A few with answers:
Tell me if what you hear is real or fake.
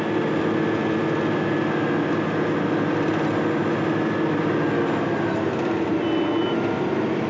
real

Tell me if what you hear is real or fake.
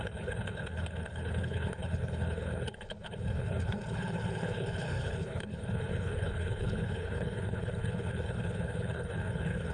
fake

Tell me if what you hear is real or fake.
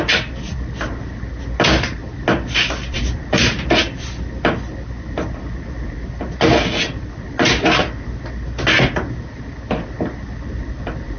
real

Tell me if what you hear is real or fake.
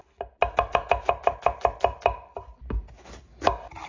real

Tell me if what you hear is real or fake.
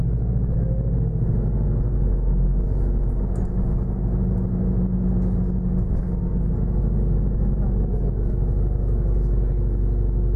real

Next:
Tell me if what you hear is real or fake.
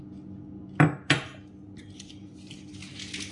real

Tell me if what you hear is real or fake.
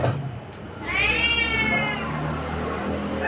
real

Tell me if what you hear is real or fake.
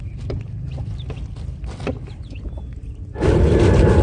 fake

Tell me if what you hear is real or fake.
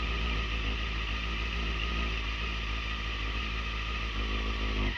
real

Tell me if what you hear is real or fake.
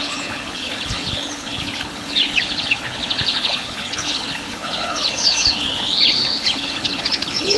fake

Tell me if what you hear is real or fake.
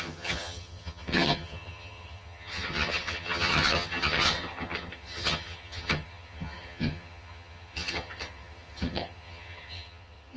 fake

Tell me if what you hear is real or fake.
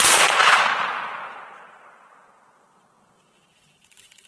fake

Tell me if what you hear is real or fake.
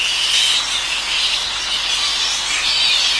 real